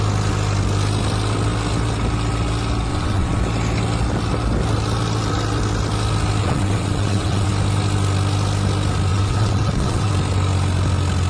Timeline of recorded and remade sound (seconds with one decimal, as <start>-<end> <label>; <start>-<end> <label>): 0.0-2.9 recorded; 2.9-3.4 remade; 3.4-6.4 recorded; 6.4-7.5 remade; 7.5-9.1 recorded; 9.1-10.1 remade; 10.1-11.3 recorded